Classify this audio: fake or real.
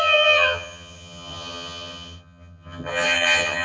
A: fake